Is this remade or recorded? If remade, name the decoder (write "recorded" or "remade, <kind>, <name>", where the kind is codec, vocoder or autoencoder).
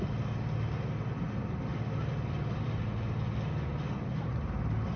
recorded